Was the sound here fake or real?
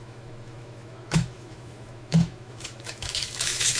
fake